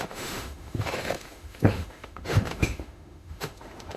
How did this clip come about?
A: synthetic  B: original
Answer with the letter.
A